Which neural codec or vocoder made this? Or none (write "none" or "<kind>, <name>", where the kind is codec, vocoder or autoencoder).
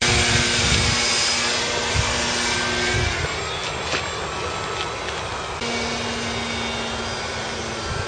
none